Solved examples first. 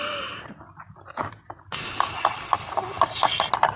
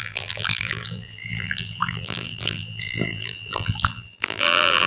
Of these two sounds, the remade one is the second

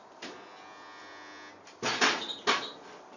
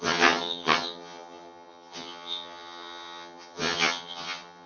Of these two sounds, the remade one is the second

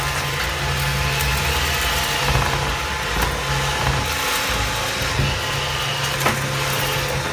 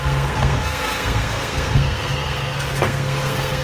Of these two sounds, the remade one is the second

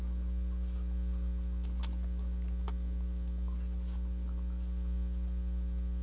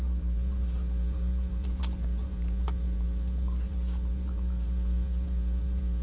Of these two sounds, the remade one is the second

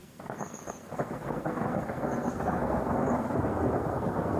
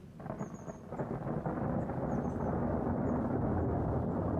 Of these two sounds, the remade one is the first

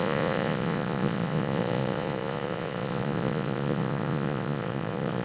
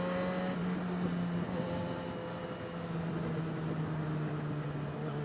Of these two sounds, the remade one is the first